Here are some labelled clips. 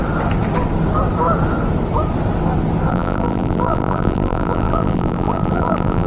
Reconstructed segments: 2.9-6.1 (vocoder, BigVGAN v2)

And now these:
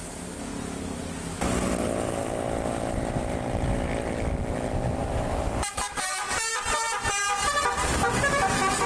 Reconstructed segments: 5.0-7.5 (vocoder, BigVGAN v2)

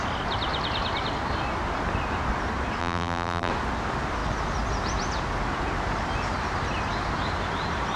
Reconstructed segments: 2.8-3.5 (vocoder, BigVGAN v2)